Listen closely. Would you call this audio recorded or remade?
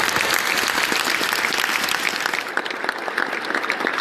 recorded